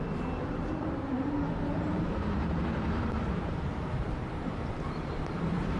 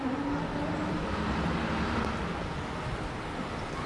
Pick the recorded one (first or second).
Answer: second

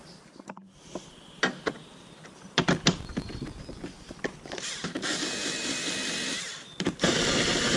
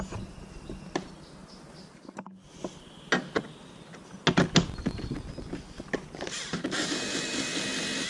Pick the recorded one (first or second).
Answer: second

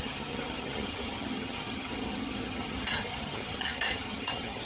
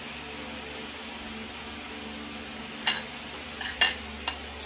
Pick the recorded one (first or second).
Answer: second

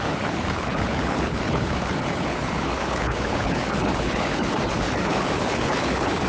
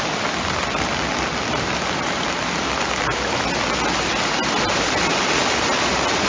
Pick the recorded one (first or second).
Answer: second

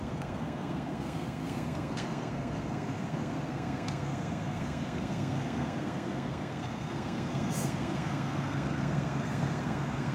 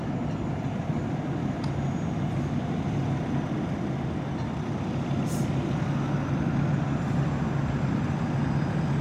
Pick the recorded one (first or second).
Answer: second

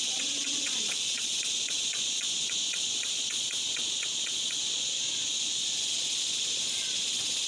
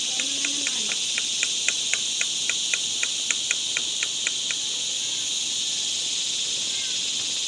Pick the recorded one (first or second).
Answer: second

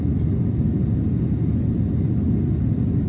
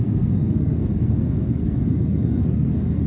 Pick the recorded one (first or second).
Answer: first